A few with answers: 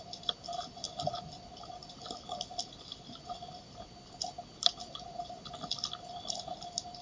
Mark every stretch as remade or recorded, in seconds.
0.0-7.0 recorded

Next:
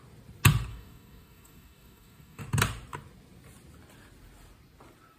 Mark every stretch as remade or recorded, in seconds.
0.0-0.7 recorded; 0.7-2.4 remade; 2.4-5.2 recorded

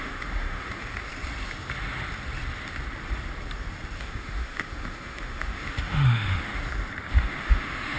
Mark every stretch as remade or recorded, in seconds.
0.0-1.1 remade; 1.1-4.0 recorded; 4.0-6.5 remade; 6.5-7.1 recorded; 7.1-8.0 remade

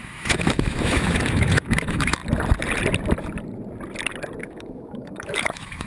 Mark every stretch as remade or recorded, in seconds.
0.0-2.2 remade; 2.2-4.4 recorded; 4.4-5.9 remade

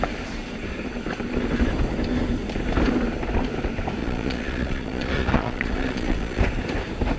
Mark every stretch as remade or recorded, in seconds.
0.0-4.0 recorded; 4.0-6.4 remade; 6.4-7.2 recorded

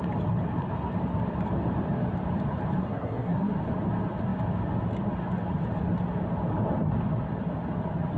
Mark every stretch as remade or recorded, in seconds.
0.0-2.8 recorded; 2.8-3.5 remade; 3.5-8.2 recorded

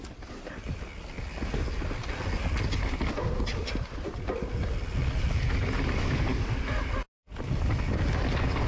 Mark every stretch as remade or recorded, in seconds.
0.0-8.7 recorded